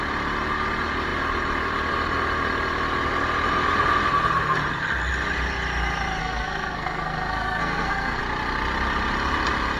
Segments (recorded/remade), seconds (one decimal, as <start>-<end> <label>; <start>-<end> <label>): 0.0-6.2 recorded; 6.2-8.2 remade; 8.2-9.8 recorded